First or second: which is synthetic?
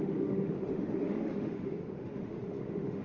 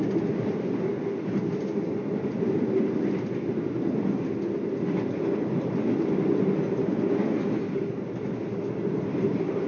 first